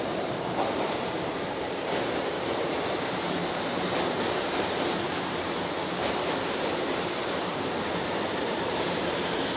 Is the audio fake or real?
fake